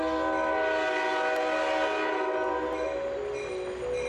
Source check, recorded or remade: recorded